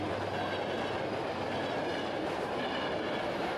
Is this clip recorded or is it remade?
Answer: recorded